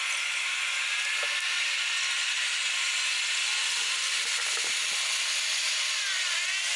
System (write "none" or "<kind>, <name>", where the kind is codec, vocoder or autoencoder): none